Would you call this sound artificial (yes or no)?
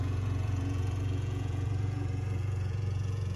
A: yes